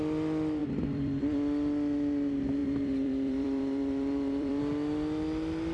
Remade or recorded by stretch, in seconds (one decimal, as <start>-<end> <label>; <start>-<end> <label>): 0.0-0.6 recorded; 0.6-1.2 remade; 1.2-2.6 recorded; 2.6-4.6 remade; 4.6-5.7 recorded